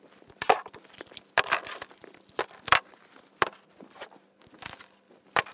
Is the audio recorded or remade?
recorded